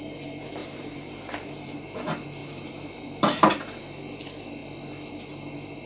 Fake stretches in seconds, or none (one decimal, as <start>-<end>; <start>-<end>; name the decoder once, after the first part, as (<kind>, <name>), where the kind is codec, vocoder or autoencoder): 0.6-1.8 (vocoder, BigVGAN v2); 2.4-3.8